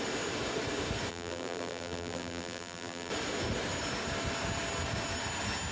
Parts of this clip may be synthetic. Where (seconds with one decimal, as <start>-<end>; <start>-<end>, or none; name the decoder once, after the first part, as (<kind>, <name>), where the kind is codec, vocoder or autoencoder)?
1.1-3.1 (vocoder, BigVGAN v2)